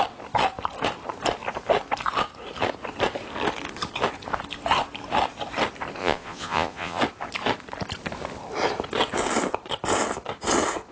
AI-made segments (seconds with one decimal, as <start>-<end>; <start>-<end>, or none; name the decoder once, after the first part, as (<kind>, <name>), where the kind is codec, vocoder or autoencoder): 6.0-7.0 (vocoder, Vocos)